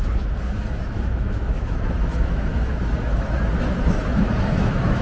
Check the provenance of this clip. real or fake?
fake